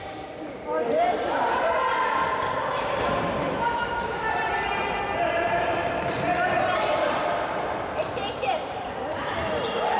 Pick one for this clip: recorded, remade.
remade